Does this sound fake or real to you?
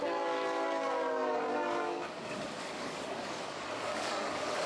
fake